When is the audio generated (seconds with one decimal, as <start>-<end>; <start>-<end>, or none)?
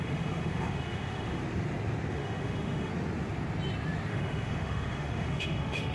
0.0-1.4; 2.1-2.9; 4.1-5.9